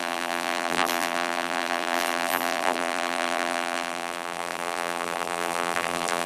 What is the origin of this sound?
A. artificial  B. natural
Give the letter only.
A